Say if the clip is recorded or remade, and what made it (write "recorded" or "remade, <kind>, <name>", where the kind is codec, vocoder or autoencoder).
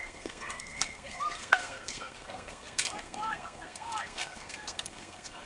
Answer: remade, codec, SNAC